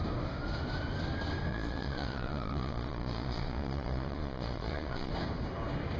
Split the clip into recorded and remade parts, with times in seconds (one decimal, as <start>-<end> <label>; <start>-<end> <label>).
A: 0.0-1.5 recorded; 1.5-5.1 remade; 5.1-6.0 recorded